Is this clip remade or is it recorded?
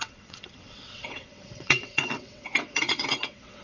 remade